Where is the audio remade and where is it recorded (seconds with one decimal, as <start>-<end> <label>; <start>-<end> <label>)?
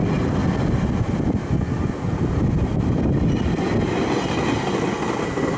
0.0-5.6 recorded